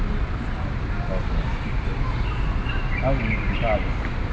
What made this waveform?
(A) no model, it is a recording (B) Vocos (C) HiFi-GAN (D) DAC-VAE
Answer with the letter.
A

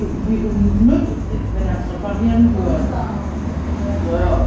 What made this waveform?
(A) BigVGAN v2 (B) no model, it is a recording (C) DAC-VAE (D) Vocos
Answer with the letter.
B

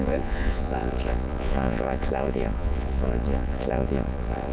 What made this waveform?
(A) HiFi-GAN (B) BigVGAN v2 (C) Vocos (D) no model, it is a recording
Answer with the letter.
C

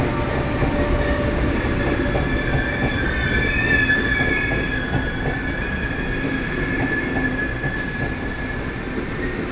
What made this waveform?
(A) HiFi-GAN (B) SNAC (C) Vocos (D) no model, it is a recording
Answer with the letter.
D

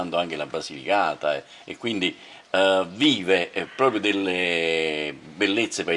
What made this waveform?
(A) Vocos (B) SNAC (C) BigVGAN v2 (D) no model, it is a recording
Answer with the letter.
D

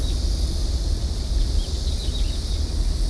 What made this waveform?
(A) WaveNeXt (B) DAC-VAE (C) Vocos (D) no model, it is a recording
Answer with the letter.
D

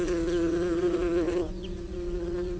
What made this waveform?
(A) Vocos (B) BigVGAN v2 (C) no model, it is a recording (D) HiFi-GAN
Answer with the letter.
A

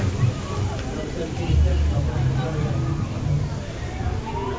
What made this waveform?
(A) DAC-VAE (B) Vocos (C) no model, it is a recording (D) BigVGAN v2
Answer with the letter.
C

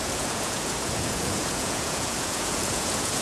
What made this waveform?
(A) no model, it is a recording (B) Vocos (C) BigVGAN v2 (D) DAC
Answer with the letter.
B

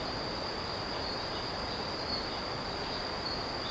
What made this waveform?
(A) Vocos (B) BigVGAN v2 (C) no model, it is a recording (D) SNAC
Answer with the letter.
C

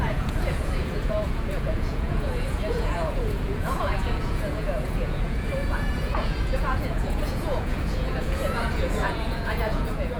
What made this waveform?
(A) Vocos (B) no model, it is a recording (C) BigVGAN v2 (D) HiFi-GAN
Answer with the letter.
A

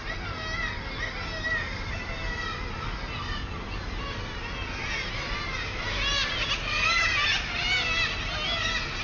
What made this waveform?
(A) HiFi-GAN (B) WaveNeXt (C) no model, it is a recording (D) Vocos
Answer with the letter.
C